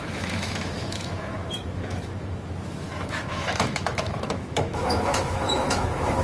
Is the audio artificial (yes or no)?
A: yes